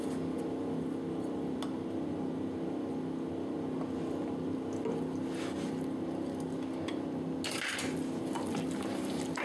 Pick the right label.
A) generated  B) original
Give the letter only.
B